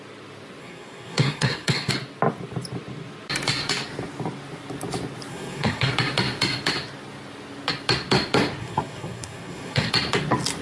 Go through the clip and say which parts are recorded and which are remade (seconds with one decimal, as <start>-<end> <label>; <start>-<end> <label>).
0.0-0.6 recorded; 0.6-1.9 remade; 1.9-5.3 recorded; 5.3-5.9 remade; 5.9-8.6 recorded; 8.6-9.9 remade; 9.9-10.6 recorded

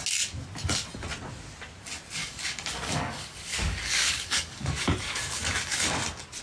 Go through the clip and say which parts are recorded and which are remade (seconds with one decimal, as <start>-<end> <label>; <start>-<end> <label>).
0.0-2.2 recorded; 2.2-5.8 remade; 5.8-6.4 recorded

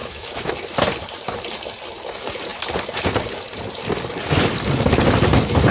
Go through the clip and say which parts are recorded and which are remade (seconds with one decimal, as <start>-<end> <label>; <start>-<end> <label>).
0.0-0.5 remade; 0.5-5.7 recorded

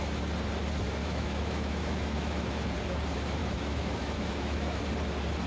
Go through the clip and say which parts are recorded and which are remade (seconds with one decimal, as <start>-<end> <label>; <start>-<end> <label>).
0.0-1.0 recorded; 1.0-2.7 remade; 2.7-3.4 recorded; 3.4-4.8 remade; 4.8-5.5 recorded